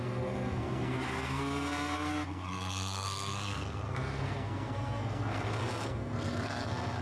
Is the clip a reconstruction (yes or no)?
yes